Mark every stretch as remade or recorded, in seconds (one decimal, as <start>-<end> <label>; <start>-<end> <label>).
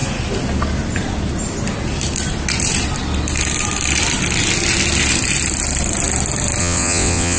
0.0-6.6 recorded; 6.6-7.4 remade